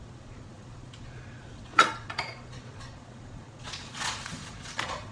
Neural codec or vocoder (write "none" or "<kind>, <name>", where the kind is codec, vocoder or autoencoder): vocoder, Vocos